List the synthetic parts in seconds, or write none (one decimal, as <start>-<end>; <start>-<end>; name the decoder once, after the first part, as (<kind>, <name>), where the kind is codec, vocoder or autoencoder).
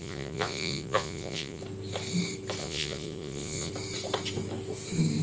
0.0-1.6 (vocoder, Vocos); 2.6-3.7